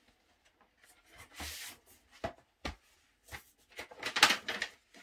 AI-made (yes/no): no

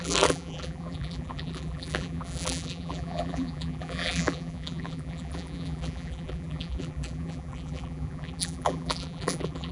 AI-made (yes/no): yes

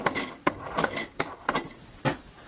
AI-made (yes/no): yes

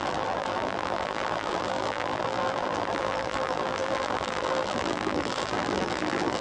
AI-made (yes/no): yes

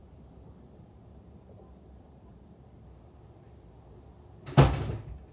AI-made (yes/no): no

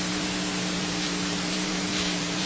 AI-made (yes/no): yes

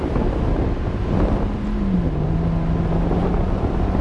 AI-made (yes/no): no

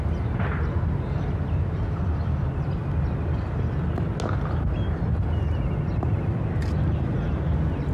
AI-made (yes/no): no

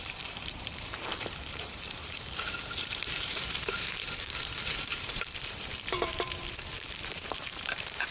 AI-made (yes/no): yes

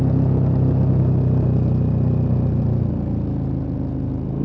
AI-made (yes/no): no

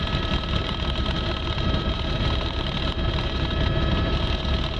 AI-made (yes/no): yes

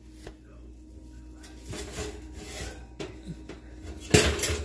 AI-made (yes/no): no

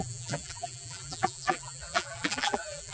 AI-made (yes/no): yes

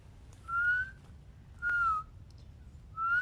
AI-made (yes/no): no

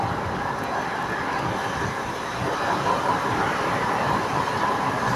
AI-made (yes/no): no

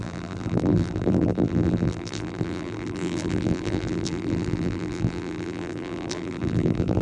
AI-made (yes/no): yes